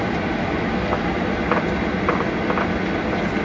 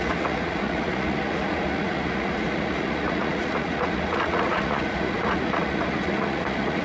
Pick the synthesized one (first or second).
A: second